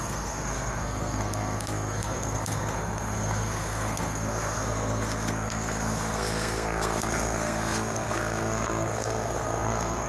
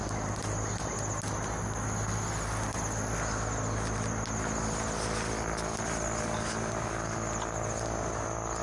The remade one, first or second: first